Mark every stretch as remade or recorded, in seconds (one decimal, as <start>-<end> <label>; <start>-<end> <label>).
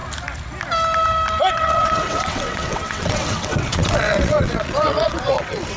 0.0-1.5 recorded; 1.5-5.8 remade